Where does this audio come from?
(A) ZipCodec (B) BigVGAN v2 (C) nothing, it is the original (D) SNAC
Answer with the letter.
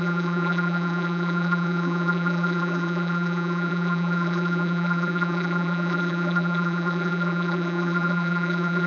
B